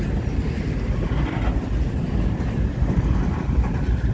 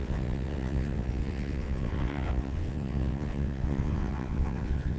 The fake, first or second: second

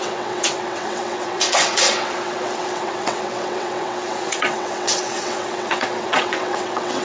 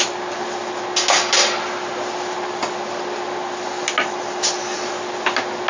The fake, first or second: first